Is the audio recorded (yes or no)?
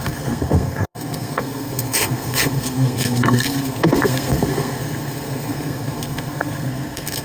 no